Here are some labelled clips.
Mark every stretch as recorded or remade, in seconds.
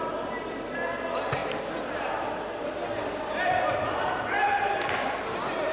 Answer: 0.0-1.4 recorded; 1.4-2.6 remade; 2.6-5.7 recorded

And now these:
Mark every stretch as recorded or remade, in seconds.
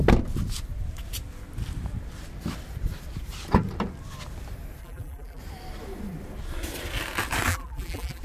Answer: 0.0-4.8 recorded; 4.8-5.4 remade; 5.4-7.5 recorded; 7.5-8.2 remade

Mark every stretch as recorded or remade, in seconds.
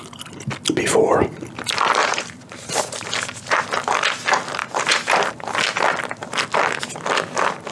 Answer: 0.0-2.0 recorded; 2.0-3.1 remade; 3.1-4.6 recorded; 4.6-5.5 remade; 5.5-7.7 recorded